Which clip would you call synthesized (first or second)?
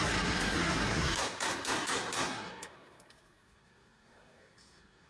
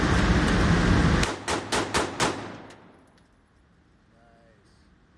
first